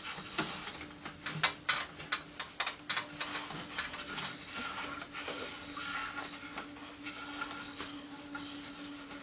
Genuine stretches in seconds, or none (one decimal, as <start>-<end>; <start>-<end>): 0.0-9.2